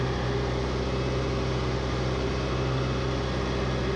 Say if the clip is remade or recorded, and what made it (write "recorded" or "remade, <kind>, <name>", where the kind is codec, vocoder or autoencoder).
recorded